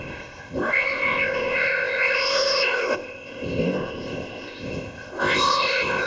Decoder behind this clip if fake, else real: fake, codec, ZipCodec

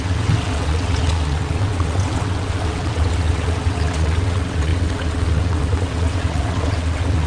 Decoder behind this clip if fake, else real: fake, vocoder, WaveNeXt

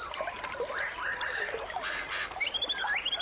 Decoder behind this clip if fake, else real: real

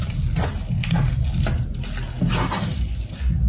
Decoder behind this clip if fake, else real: real